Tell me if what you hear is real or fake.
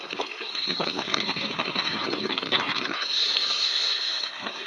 fake